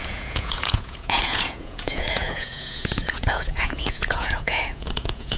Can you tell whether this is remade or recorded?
remade